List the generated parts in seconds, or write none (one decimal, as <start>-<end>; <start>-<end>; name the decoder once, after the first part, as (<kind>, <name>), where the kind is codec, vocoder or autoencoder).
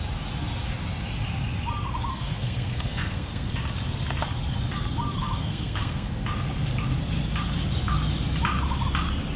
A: 2.1-3.5 (codec, SNAC); 5.2-6.1